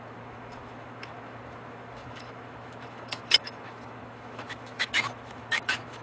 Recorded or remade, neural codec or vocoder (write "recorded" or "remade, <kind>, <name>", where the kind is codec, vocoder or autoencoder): remade, autoencoder, DAC-VAE